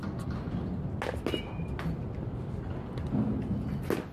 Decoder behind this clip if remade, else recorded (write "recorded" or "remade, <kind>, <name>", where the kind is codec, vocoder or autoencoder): recorded